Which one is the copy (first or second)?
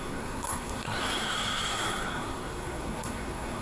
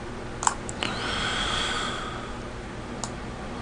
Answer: first